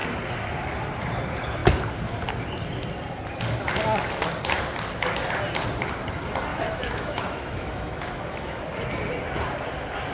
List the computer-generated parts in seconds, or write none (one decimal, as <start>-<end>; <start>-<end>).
6.5-8.6